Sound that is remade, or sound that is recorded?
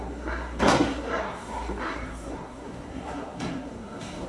remade